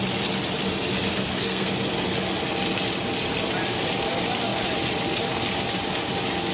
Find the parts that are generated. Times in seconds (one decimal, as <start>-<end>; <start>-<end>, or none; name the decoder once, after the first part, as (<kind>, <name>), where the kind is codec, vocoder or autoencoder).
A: 1.1-1.7 (codec, SNAC)